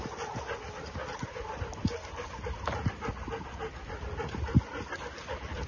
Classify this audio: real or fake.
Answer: real